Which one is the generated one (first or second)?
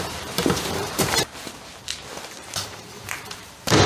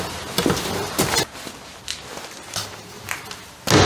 first